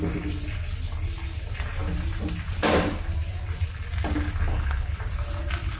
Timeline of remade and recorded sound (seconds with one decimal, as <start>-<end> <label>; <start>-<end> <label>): 0.0-4.5 recorded; 4.5-5.0 remade; 5.0-5.8 recorded